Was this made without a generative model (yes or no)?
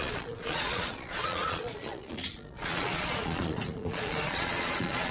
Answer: no